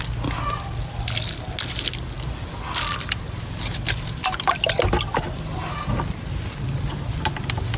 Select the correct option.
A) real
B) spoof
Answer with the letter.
A